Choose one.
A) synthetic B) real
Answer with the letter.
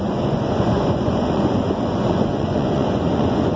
A